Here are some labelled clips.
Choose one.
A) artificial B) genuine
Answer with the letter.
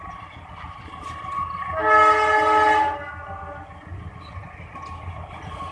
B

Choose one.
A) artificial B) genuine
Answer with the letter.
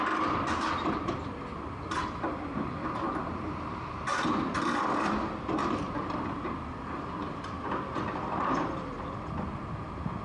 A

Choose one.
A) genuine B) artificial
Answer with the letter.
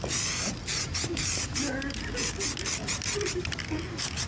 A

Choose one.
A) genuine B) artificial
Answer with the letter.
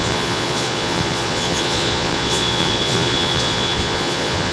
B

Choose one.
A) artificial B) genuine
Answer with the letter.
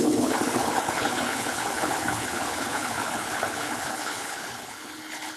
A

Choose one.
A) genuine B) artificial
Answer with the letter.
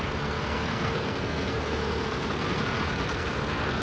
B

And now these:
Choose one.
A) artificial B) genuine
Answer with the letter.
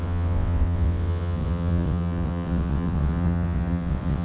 A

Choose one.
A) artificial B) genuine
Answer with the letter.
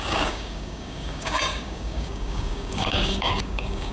A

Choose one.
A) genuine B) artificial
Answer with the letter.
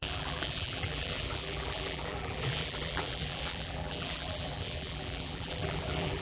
B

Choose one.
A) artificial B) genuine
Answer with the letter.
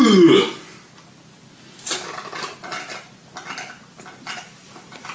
B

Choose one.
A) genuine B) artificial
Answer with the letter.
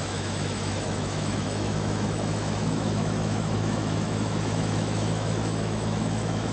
B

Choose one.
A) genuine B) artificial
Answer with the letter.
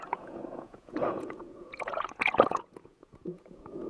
B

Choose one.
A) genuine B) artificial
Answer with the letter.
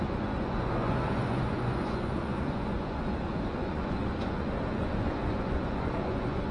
B